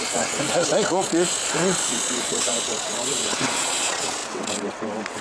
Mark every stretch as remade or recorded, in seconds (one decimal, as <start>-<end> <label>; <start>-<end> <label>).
0.0-5.2 remade